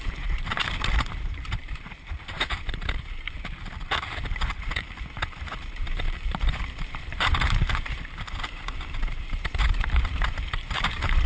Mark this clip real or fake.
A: fake